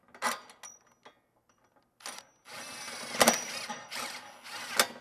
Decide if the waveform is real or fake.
real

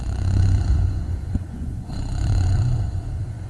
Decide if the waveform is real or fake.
fake